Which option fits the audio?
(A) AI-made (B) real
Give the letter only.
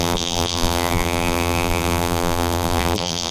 A